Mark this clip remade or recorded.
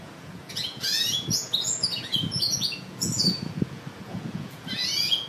remade